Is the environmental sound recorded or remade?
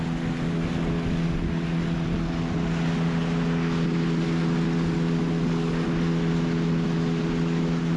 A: recorded